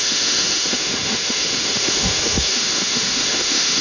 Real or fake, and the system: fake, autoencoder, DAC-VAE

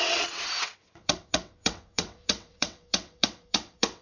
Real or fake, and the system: fake, vocoder, WaveNeXt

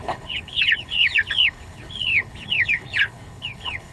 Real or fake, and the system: fake, codec, HILCodec